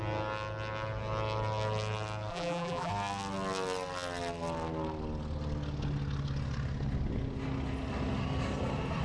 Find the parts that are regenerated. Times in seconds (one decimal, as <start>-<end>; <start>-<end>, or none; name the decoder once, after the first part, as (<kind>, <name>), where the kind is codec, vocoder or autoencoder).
2.3-2.9 (vocoder, BigVGAN v2)